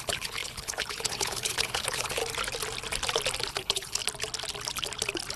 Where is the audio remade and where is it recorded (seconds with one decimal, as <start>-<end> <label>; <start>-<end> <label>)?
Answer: 0.0-2.2 remade; 2.2-3.5 recorded; 3.5-4.0 remade; 4.0-5.4 recorded